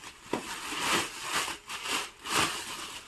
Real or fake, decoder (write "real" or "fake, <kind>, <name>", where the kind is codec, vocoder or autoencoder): real